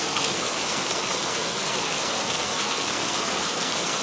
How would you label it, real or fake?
fake